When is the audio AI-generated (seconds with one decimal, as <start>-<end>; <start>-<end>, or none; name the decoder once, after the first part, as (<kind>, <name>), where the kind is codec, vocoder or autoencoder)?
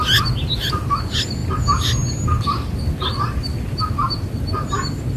none